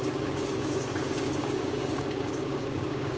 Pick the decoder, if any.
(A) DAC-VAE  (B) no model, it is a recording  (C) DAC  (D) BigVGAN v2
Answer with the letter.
C